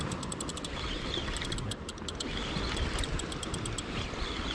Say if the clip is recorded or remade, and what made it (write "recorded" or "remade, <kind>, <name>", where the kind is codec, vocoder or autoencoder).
recorded